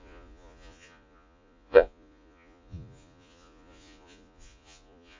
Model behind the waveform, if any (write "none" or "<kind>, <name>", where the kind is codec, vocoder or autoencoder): vocoder, Vocos